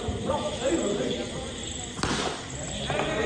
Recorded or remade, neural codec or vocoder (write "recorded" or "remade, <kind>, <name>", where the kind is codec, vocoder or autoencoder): recorded